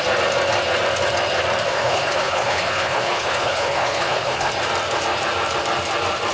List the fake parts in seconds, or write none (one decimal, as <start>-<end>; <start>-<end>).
1.7-4.5